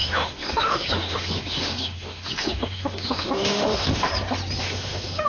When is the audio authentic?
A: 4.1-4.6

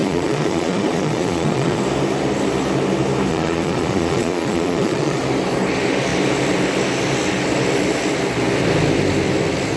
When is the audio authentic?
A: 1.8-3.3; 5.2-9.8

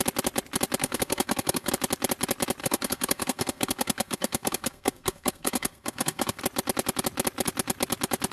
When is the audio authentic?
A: 0.0-0.8; 1.7-2.6; 6.4-8.3

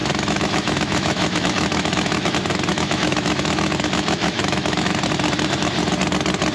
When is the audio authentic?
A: 2.3-2.7; 5.0-6.5

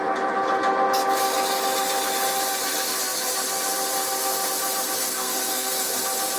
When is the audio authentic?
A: 0.0-5.0; 6.0-6.4

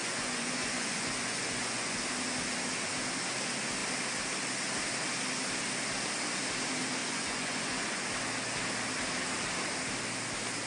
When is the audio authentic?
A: 2.0-7.0; 8.0-10.7